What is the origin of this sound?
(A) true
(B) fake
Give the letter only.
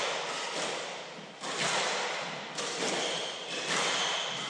A